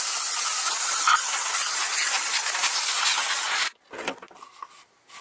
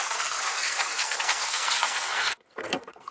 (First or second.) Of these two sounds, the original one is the first